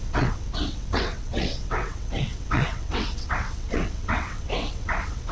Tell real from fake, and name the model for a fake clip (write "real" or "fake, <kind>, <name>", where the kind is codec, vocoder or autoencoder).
fake, vocoder, WaveNeXt